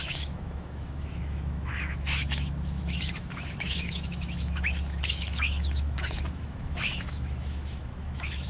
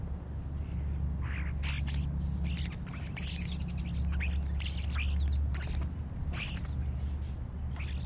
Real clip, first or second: second